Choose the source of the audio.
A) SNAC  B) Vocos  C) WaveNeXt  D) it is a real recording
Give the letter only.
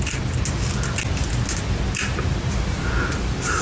D